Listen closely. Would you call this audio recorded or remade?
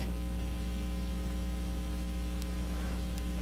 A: remade